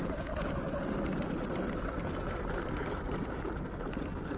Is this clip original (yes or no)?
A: yes